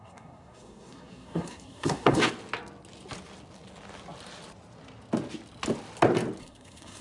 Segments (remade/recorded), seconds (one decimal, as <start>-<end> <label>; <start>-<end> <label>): 0.0-2.2 remade; 2.2-6.4 recorded; 6.4-7.0 remade